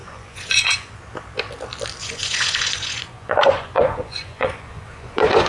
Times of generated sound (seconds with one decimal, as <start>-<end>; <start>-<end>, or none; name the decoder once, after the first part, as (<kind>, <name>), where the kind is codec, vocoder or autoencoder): 0.0-1.0 (vocoder, Vocos); 2.0-5.5